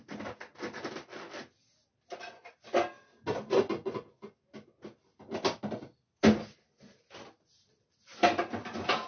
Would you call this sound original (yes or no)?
yes